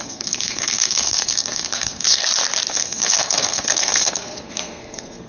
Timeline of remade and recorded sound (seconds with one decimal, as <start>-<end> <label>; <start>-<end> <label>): 0.0-2.2 remade; 2.2-2.7 recorded; 2.7-5.3 remade